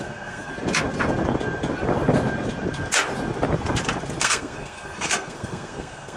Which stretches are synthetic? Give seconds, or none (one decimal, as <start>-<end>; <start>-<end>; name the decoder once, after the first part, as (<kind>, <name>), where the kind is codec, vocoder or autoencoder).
0.0-0.5 (codec, SNAC); 4.2-6.2